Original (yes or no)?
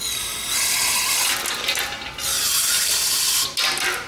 yes